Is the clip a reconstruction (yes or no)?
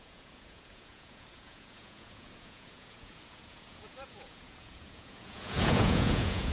yes